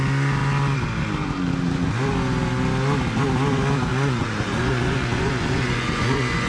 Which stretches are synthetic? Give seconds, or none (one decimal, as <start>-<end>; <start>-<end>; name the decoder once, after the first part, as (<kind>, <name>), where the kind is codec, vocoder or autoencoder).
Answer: 3.9-6.5 (vocoder, Vocos)